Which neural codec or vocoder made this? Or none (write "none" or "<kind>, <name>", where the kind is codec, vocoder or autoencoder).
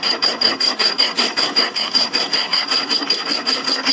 codec, SNAC